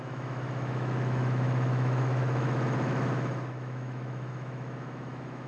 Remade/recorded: remade